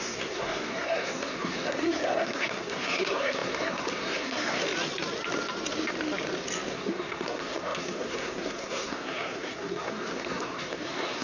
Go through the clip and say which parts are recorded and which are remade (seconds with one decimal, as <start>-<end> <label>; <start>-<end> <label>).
0.0-4.6 remade; 4.6-6.7 recorded; 6.7-11.2 remade